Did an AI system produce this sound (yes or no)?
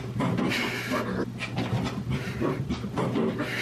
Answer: no